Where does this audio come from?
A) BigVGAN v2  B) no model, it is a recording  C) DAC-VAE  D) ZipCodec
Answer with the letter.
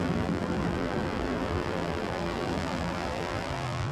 A